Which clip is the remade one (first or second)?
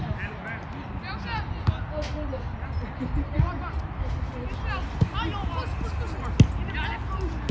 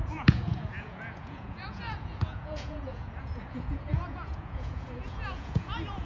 second